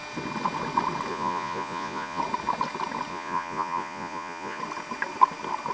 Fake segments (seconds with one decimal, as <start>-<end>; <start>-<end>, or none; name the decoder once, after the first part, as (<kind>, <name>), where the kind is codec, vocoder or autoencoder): 1.1-2.2 (vocoder, Vocos); 3.1-4.6